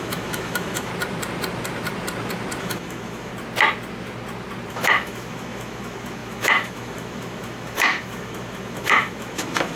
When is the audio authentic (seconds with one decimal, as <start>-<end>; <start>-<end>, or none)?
0.9-2.6; 3.3-4.7